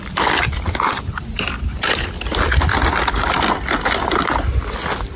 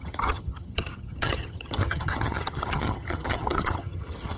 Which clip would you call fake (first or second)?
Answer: second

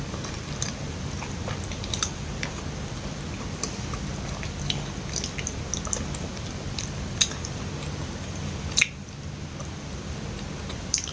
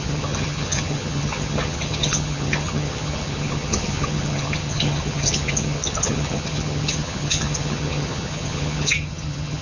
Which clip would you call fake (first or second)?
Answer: second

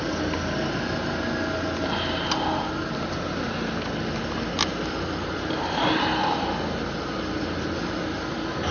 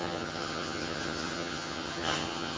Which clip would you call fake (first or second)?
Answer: second